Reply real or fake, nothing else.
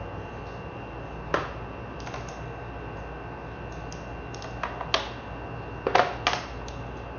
real